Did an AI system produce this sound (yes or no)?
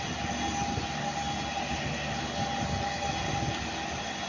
no